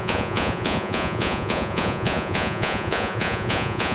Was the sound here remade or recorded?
remade